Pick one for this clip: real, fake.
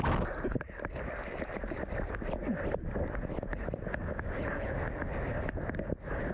real